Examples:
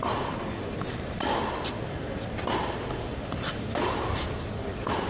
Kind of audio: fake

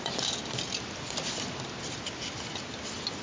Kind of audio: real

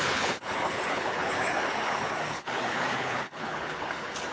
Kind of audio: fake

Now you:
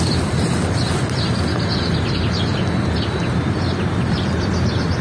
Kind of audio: real